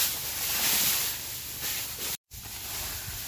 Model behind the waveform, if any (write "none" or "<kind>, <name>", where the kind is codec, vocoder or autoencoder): none